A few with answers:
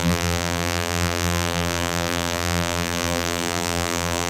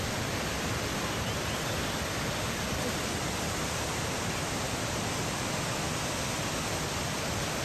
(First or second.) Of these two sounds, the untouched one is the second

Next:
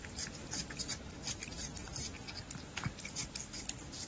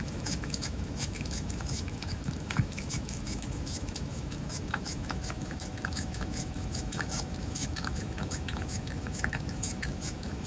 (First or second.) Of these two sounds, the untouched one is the first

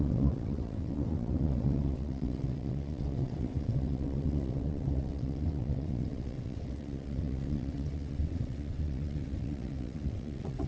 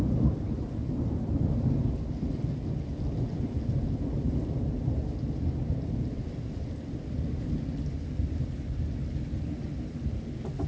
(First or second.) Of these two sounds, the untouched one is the second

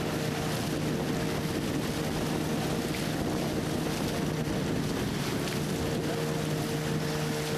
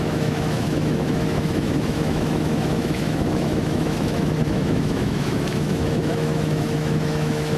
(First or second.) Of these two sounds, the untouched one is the first